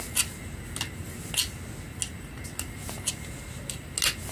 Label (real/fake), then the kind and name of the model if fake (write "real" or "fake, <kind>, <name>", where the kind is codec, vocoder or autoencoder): real